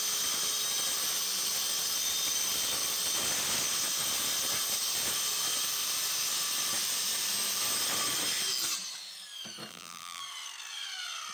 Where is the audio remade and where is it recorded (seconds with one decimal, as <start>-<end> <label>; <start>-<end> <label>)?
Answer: 0.0-9.7 recorded; 9.7-10.2 remade; 10.2-11.3 recorded